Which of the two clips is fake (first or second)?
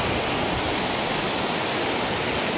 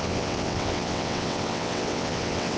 second